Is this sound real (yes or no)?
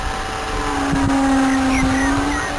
yes